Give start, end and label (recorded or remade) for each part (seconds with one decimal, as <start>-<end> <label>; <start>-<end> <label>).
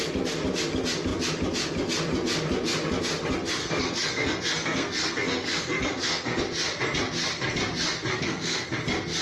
0.0-3.6 recorded; 3.6-6.4 remade; 6.4-8.1 recorded; 8.1-8.7 remade; 8.7-9.2 recorded